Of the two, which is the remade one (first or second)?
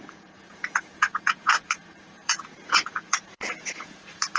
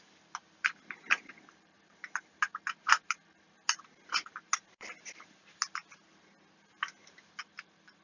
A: first